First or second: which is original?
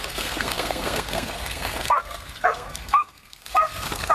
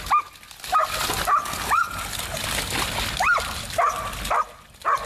second